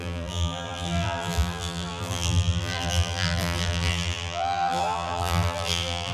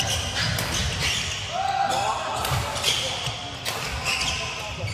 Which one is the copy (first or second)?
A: first